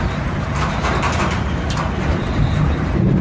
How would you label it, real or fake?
fake